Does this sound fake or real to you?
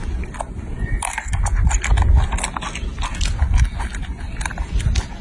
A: real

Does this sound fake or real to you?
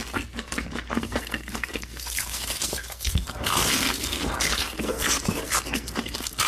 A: fake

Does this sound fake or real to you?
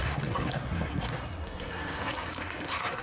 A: fake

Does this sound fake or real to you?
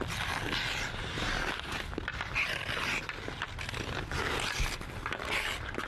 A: real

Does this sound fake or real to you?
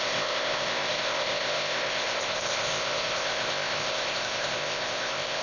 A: fake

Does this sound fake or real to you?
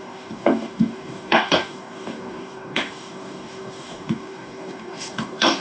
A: fake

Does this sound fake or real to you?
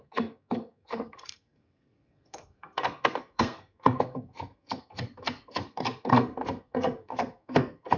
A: fake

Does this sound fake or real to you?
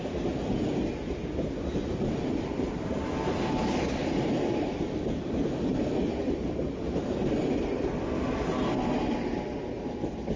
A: real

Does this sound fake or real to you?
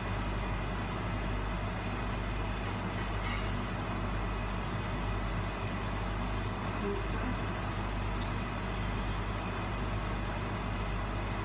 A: real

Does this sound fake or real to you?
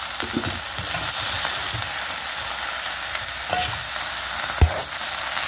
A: real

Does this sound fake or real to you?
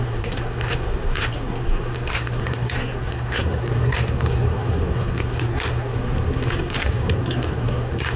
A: fake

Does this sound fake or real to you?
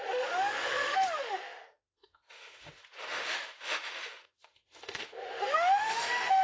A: fake